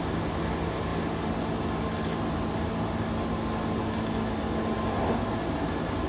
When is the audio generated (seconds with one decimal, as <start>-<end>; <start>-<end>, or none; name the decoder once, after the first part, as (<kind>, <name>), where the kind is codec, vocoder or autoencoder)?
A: none